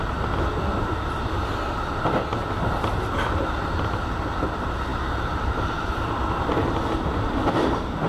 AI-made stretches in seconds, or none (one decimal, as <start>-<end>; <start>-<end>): 4.9-6.0